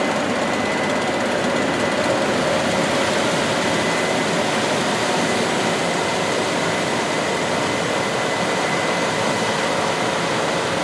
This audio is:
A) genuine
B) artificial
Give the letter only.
A